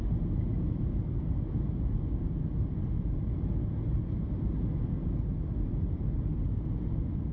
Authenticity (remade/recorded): recorded